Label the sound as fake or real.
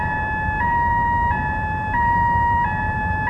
fake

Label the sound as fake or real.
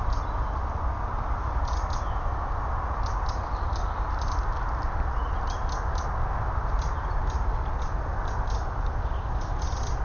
real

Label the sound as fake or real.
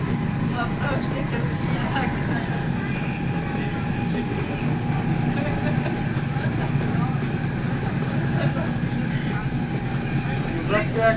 real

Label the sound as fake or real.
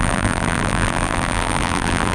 fake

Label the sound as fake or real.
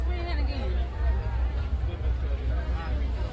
real